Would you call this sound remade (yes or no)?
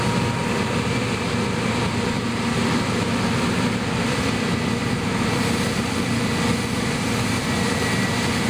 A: yes